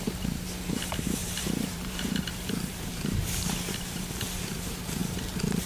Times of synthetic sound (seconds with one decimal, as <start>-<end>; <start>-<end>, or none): 1.2-3.7

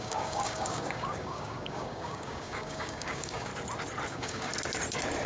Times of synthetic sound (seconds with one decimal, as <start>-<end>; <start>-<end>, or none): 0.0-3.5; 4.1-4.5

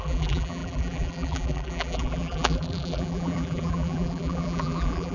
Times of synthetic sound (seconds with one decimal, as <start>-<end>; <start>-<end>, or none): 0.0-5.1